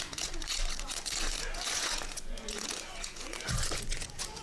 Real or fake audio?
fake